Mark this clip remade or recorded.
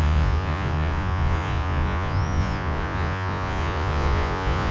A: remade